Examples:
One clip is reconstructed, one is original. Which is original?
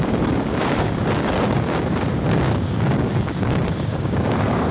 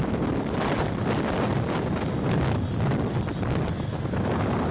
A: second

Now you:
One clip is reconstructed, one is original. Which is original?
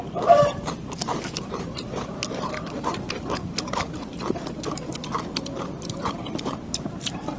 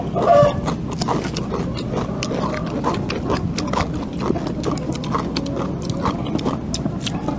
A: second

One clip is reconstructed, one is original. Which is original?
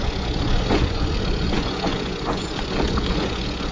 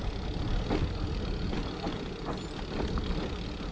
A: second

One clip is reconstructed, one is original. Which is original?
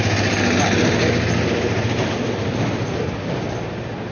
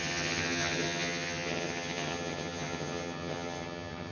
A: first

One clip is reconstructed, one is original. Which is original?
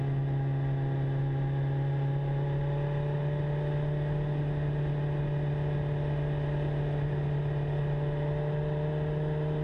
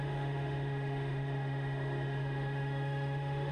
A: first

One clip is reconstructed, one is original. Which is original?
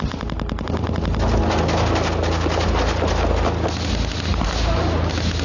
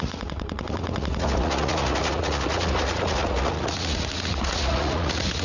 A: first